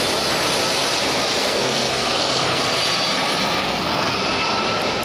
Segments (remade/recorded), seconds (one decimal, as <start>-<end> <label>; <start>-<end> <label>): 0.0-1.4 recorded; 1.4-2.6 remade; 2.6-3.6 recorded; 3.6-4.2 remade; 4.2-5.0 recorded